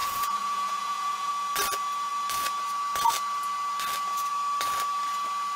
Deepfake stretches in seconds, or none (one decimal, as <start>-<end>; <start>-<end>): 0.0-1.3